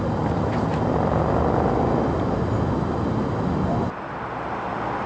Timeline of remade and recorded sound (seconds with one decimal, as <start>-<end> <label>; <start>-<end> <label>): 0.0-5.1 recorded